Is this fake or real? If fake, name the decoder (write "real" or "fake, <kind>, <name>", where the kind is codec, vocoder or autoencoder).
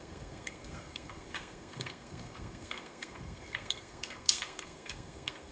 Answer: fake, codec, SNAC